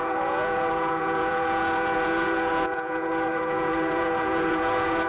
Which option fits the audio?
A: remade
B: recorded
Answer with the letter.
A